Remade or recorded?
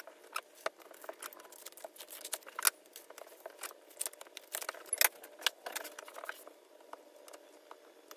recorded